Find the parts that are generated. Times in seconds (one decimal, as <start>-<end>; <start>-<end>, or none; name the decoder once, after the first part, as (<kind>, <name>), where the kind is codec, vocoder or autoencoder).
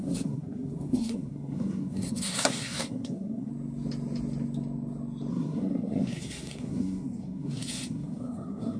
0.0-3.5 (codec, SNAC); 5.3-8.8